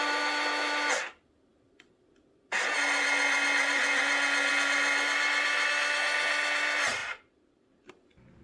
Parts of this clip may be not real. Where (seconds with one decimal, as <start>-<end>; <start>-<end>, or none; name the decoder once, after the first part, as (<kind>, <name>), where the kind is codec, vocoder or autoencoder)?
7.0-7.9 (vocoder, BigVGAN v2)